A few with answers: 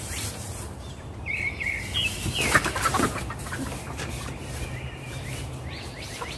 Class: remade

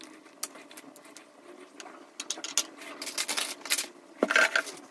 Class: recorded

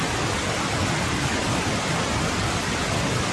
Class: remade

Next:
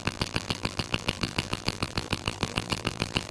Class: remade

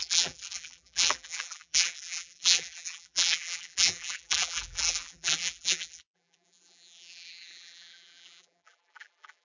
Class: remade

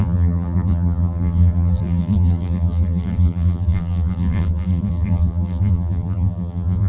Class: remade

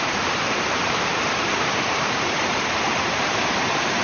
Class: remade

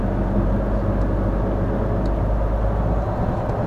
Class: recorded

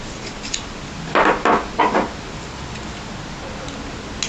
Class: recorded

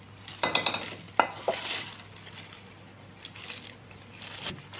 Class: recorded